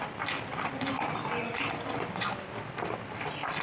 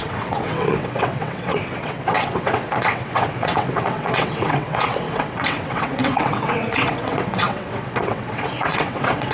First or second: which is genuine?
first